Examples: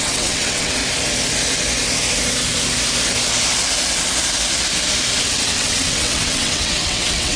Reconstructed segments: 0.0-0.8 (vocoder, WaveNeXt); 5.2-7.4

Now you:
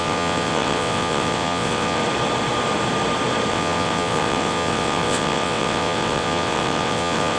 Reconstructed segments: 0.0-2.0 (vocoder, WaveNeXt); 3.5-7.4

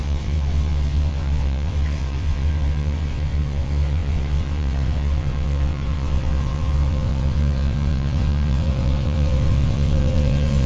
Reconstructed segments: 0.0-10.7 (vocoder, WaveNeXt)